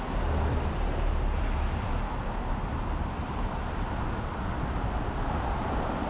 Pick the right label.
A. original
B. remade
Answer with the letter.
A